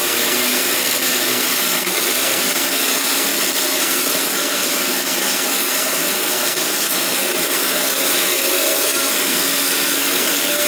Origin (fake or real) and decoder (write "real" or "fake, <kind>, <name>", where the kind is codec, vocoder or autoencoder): fake, codec, SNAC